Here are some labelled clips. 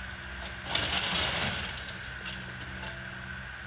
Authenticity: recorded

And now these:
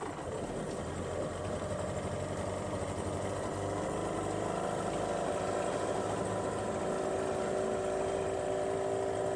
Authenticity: recorded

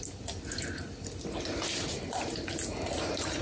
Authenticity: recorded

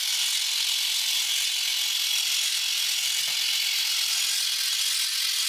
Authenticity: recorded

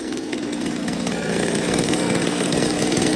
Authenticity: remade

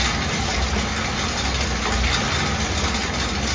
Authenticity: recorded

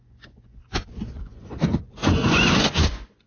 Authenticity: remade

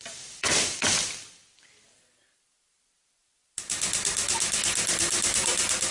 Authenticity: remade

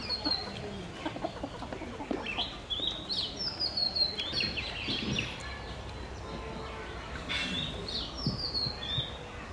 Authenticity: recorded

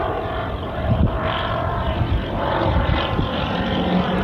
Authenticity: remade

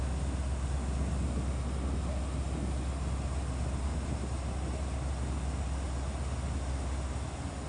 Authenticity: recorded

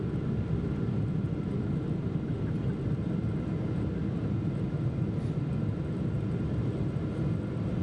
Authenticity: recorded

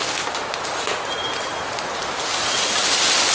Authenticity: recorded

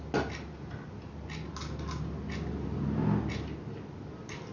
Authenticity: recorded